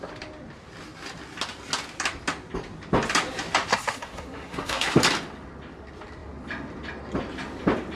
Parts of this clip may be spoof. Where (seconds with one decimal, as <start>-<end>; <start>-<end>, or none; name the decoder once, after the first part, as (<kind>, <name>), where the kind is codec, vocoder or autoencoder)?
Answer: 3.7-5.0 (codec, SNAC)